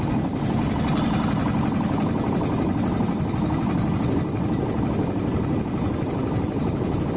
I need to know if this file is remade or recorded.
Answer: recorded